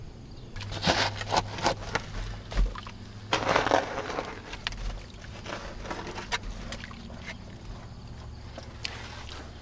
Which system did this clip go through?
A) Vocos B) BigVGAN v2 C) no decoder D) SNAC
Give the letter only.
C